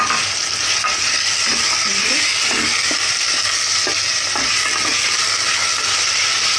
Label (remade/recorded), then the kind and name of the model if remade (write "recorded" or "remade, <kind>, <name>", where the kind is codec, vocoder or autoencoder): recorded